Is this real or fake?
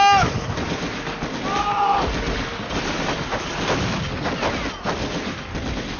real